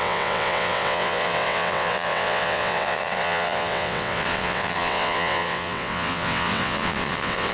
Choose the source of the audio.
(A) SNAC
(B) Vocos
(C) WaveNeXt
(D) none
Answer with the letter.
C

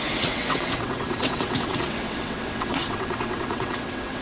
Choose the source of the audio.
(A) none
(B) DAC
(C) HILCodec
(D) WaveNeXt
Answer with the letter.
D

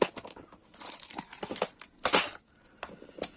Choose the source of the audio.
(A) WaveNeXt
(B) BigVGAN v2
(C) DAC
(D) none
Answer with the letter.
D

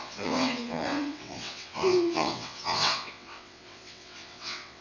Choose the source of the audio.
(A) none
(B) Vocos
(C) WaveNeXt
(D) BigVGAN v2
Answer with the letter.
C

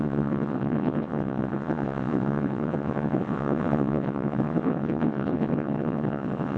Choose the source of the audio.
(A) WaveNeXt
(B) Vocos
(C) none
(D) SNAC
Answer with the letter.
A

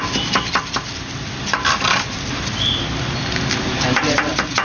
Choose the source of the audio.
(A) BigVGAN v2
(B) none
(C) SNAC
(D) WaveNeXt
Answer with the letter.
B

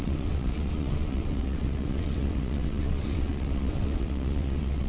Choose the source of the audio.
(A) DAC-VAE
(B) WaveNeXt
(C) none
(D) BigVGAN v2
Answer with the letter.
B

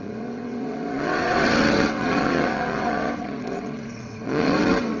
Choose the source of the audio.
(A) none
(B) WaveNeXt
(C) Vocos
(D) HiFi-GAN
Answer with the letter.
B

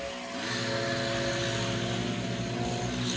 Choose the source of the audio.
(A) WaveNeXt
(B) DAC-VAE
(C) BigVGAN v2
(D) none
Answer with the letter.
D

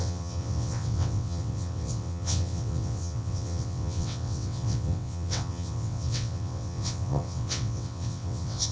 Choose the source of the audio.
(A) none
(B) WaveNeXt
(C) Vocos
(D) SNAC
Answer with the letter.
B